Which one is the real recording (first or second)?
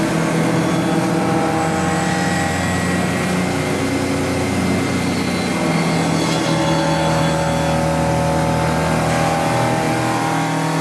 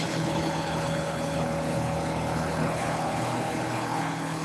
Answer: first